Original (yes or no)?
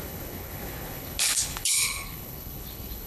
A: no